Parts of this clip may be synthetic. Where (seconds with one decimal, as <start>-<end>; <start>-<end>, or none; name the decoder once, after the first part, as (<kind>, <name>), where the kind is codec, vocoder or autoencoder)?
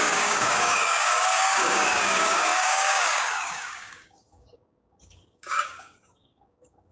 0.0-6.9 (codec, DAC)